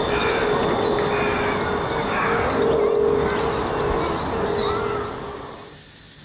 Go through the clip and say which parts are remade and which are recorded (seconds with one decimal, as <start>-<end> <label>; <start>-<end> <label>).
0.0-2.0 recorded; 2.0-2.6 remade; 2.6-6.2 recorded